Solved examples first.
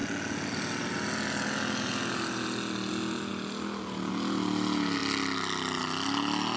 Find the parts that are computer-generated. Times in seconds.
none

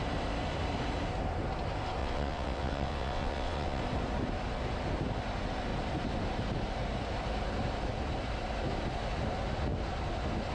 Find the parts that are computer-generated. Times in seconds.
2.0-3.8 (vocoder, WaveNeXt)

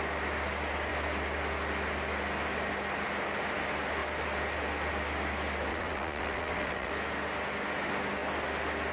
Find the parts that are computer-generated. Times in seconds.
5.7-6.9 (vocoder, WaveNeXt)

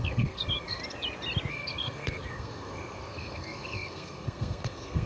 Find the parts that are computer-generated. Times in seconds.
0.0-0.8 (codec, SNAC); 1.5-5.1

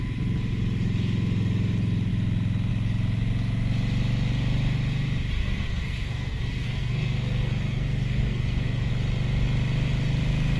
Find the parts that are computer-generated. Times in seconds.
5.4-8.9 (codec, SNAC)

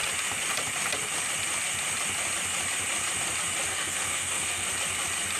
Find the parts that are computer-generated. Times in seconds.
3.7-4.7 (codec, SNAC)

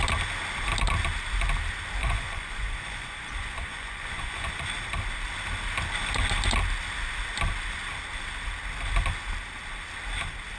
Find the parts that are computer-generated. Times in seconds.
2.0-4.5 (vocoder, Vocos)

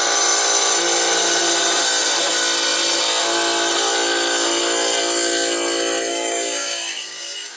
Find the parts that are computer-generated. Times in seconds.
6.1-7.6 (codec, DAC)